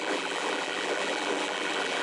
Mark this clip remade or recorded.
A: remade